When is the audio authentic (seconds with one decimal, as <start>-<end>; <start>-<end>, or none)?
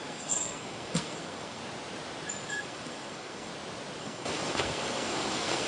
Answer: 1.6-2.5; 3.5-4.0